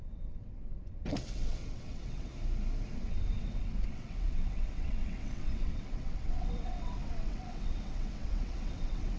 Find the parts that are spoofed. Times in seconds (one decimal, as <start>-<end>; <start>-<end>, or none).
0.0-2.3; 2.9-9.2